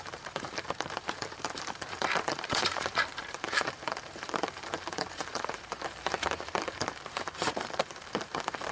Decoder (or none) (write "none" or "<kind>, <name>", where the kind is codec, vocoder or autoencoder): vocoder, BigVGAN v2